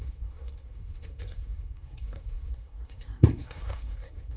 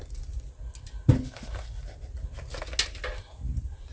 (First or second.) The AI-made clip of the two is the first